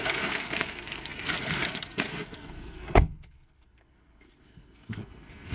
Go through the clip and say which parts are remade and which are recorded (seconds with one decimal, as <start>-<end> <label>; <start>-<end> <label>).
0.0-5.5 remade